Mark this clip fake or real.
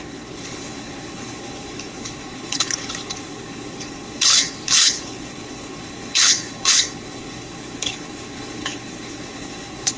fake